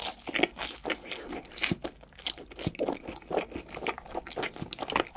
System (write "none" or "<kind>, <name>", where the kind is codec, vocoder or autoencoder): none